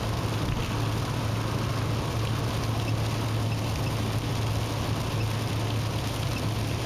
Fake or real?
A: real